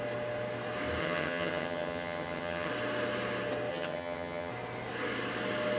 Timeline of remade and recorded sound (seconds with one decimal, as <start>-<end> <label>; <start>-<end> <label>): 0.0-1.0 recorded; 1.0-2.7 remade; 2.7-3.7 recorded; 3.7-4.5 remade; 4.5-5.8 recorded